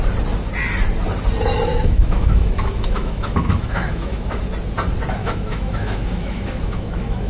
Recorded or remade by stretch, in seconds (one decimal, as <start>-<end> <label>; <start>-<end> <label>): 0.0-1.7 recorded; 1.7-4.4 remade; 4.4-5.2 recorded; 5.2-7.3 remade